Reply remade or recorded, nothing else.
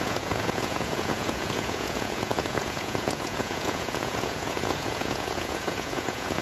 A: remade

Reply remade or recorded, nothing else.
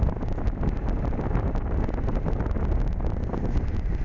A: recorded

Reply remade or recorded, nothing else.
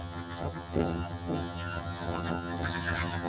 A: remade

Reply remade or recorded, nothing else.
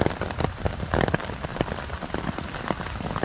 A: recorded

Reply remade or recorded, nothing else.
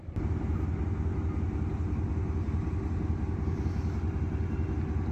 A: recorded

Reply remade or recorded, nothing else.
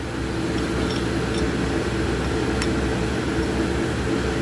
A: recorded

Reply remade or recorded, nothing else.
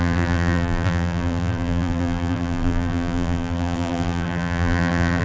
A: remade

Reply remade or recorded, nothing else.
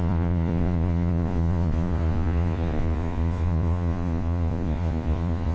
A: remade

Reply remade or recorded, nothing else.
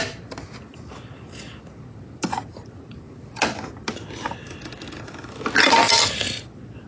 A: recorded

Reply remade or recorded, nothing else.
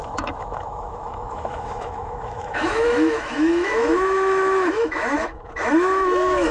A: remade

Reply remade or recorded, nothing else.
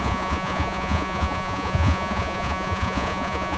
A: remade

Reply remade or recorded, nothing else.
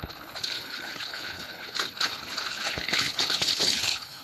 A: remade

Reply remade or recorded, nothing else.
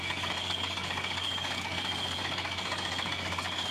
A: remade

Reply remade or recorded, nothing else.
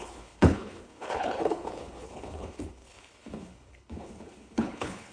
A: remade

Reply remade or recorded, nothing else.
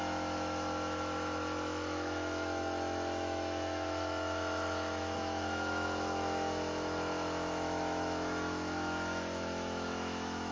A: remade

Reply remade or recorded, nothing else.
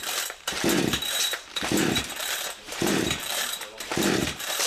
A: remade